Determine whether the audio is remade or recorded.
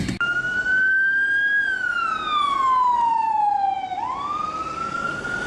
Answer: recorded